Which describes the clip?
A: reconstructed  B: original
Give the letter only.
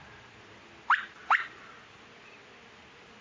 B